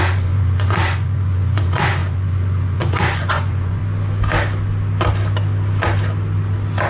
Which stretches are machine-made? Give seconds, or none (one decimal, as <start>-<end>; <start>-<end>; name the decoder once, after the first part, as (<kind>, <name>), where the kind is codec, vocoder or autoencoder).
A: 0.0-3.8 (vocoder, Vocos)